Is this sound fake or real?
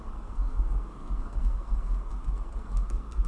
fake